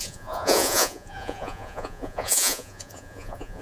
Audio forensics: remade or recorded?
remade